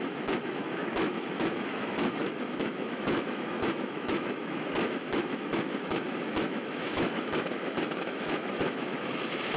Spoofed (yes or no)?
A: yes